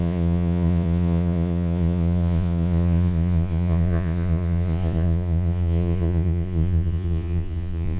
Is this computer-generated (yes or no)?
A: yes